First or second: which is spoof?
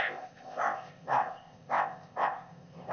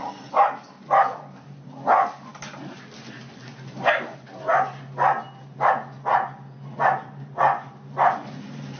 first